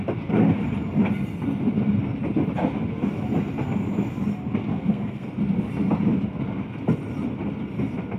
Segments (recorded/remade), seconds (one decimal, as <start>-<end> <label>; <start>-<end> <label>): 0.0-4.7 recorded; 4.7-5.3 remade; 5.3-8.2 recorded